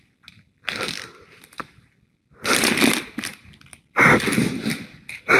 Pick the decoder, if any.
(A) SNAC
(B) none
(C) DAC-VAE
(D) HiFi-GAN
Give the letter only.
B